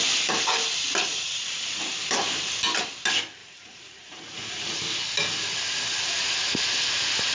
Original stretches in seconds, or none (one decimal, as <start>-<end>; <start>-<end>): 0.0-1.1; 1.9-3.4; 4.8-7.3